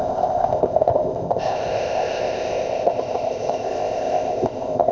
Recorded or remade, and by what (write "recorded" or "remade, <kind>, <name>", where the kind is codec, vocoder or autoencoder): remade, codec, ZipCodec